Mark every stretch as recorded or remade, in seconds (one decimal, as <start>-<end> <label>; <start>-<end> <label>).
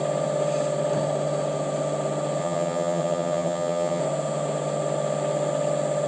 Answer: 0.0-2.4 recorded; 2.4-4.0 remade; 4.0-6.1 recorded